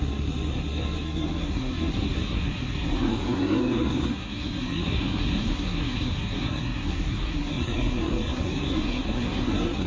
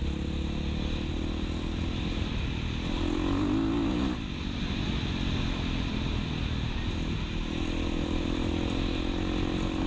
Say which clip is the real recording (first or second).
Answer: second